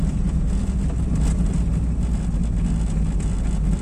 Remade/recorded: recorded